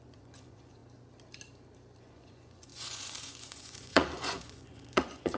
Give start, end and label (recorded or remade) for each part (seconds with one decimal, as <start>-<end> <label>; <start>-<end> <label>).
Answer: 0.0-0.8 remade; 0.8-2.0 recorded; 2.0-5.4 remade